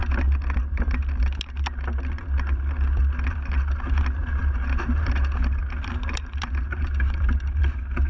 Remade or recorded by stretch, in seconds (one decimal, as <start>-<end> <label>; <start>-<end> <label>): 0.0-4.2 recorded; 4.2-7.6 remade; 7.6-8.1 recorded